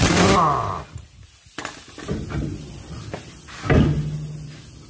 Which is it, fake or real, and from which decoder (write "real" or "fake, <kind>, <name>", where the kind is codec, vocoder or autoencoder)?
real